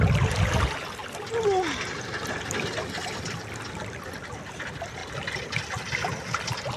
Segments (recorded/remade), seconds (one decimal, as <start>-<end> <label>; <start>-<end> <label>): 0.0-6.8 recorded